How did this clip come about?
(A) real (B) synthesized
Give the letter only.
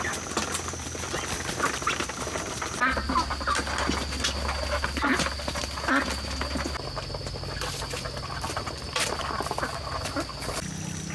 A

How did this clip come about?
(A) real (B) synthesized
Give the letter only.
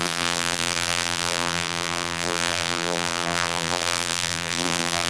B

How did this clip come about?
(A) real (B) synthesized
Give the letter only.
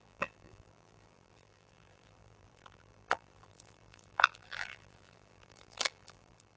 B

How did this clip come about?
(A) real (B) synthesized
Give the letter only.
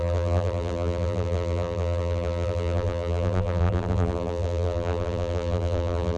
B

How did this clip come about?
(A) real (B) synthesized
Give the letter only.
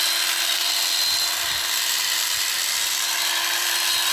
A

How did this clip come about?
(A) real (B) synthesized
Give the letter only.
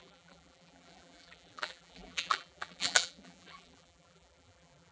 B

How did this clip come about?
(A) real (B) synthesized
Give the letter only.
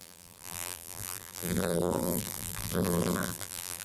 B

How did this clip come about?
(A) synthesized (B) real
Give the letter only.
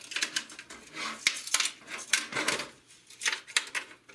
B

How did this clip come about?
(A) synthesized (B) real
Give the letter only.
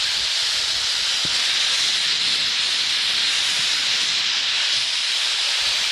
B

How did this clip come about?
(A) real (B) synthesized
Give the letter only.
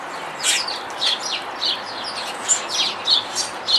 A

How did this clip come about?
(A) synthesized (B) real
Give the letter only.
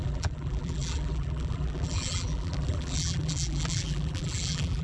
A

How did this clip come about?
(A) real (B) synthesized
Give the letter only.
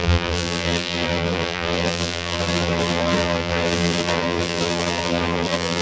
B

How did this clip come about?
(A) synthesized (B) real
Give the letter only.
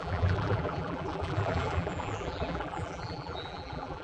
A